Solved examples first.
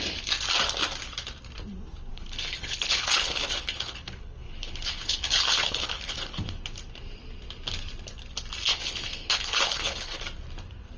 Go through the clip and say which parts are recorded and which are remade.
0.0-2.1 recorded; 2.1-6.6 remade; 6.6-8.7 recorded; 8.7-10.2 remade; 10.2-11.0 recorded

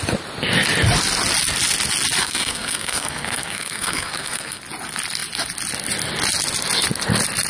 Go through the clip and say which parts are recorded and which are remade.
0.0-2.2 recorded; 2.2-4.6 remade; 4.6-7.5 recorded

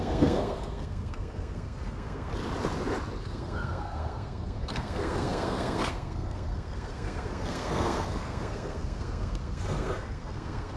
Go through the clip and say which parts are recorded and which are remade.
0.0-2.3 remade; 2.3-3.2 recorded; 3.2-10.8 remade

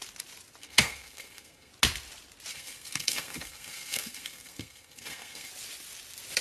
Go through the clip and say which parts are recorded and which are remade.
0.0-0.6 recorded; 0.6-1.7 remade; 1.7-2.5 recorded; 2.5-5.5 remade; 5.5-6.4 recorded

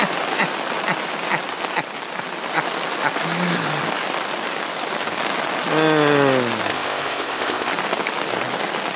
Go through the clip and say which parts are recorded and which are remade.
0.0-6.7 recorded; 6.7-7.7 remade; 7.7-9.0 recorded

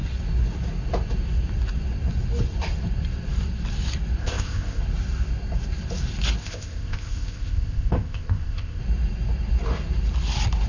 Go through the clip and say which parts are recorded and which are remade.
0.0-4.2 recorded; 4.2-4.8 remade; 4.8-6.4 recorded; 6.4-8.8 remade; 8.8-10.7 recorded